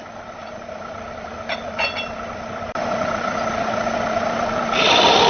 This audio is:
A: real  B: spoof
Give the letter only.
A